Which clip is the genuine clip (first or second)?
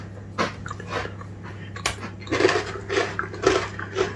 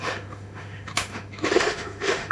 first